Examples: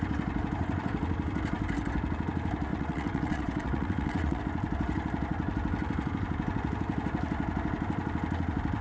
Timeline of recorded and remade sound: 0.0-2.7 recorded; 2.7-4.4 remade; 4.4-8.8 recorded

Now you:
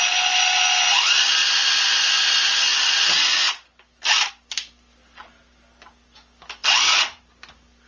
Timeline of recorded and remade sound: 0.0-7.9 recorded

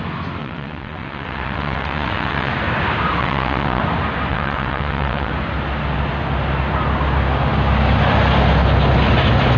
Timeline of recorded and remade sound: 0.0-0.4 recorded; 0.4-2.5 remade; 2.5-3.2 recorded; 3.2-3.8 remade; 3.8-4.3 recorded; 4.3-5.3 remade; 5.3-9.6 recorded

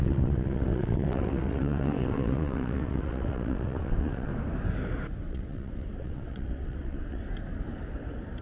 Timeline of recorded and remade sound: 0.0-4.3 remade; 4.3-5.2 recorded; 5.2-7.2 remade; 7.2-8.4 recorded